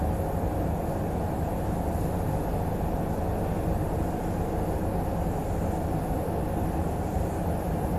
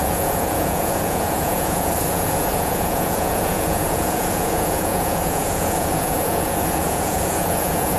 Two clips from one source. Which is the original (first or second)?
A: first